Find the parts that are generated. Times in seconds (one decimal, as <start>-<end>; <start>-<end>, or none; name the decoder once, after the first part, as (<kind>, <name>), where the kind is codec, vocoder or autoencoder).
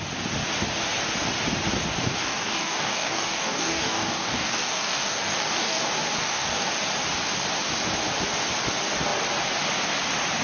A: 2.2-5.8 (codec, DAC); 6.2-6.7